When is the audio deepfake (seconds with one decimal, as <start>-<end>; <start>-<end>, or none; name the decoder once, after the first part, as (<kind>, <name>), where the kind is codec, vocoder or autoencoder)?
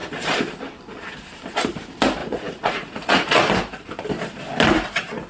2.2-3.5 (vocoder, Vocos)